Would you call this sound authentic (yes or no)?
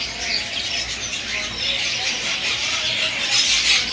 yes